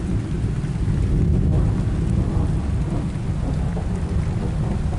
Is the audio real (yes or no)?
yes